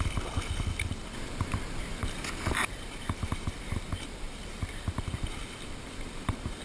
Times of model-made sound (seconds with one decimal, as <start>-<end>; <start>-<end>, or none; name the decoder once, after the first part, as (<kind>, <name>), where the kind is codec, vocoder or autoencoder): 2.0-5.0 (vocoder, BigVGAN v2)